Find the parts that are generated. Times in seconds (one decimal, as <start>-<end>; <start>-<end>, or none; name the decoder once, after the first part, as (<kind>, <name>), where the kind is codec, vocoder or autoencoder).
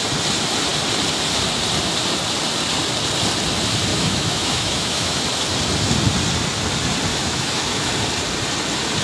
3.9-5.2 (autoencoder, DAC-VAE); 7.1-7.9